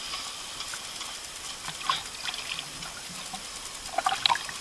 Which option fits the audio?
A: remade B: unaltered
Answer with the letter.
B